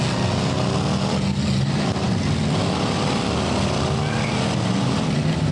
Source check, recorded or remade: recorded